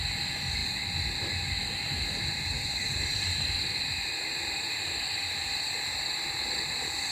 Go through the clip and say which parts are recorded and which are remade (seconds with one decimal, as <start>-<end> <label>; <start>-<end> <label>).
0.0-0.6 recorded; 0.6-1.5 remade; 1.5-7.1 recorded